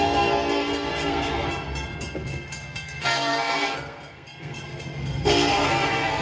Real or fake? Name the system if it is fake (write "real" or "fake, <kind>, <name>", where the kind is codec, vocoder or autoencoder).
fake, codec, SNAC